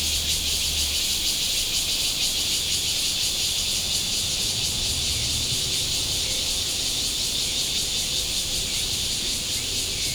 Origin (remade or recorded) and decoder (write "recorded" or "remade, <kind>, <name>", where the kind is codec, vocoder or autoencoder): recorded